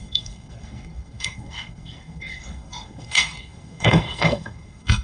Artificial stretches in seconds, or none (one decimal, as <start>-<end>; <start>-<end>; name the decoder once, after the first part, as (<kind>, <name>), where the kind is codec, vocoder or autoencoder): 0.0-5.0 (codec, SNAC)